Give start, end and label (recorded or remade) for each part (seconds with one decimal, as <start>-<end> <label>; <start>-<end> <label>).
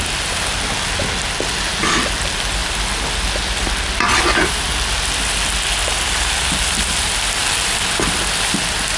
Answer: 0.0-9.0 recorded